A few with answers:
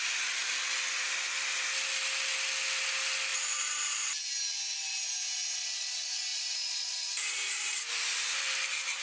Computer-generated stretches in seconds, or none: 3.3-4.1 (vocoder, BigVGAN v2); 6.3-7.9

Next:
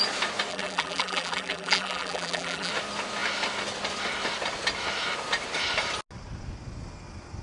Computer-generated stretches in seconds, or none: 0.5-2.7 (vocoder, BigVGAN v2)

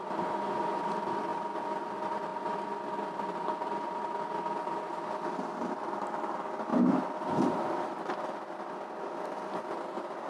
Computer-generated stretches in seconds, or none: 1.3-1.9 (vocoder, BigVGAN v2); 6.7-7.8